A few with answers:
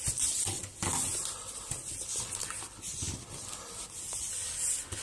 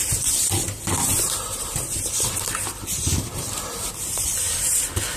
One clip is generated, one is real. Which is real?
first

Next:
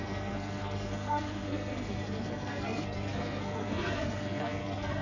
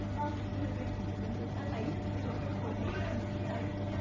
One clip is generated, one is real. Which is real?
second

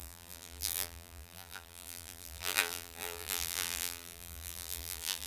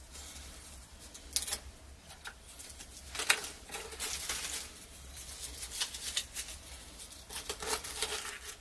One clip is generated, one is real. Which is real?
second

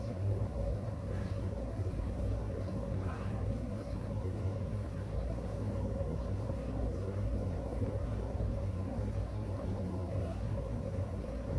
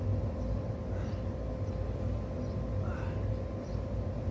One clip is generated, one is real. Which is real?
second